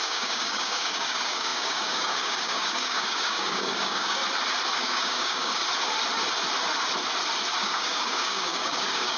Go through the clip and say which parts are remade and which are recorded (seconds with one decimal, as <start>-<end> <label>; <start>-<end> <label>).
0.0-4.2 remade; 4.2-4.8 recorded; 4.8-5.6 remade; 5.6-7.6 recorded; 7.6-9.2 remade